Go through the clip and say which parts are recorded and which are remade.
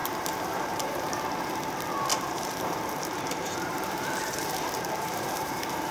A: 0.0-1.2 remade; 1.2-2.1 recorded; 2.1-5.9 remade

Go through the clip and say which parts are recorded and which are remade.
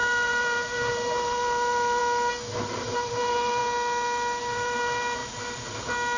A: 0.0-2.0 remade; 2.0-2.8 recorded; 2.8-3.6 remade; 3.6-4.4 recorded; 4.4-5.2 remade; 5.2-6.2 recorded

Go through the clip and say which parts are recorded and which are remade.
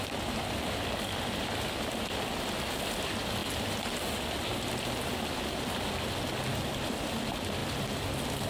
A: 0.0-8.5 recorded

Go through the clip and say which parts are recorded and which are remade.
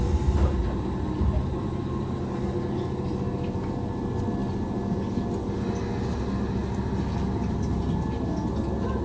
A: 0.0-6.6 recorded; 6.6-7.8 remade; 7.8-9.0 recorded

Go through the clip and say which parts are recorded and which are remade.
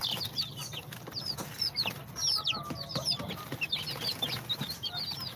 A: 0.0-5.4 recorded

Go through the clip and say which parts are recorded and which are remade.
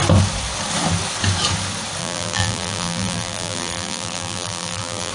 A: 0.0-2.0 recorded; 2.0-5.1 remade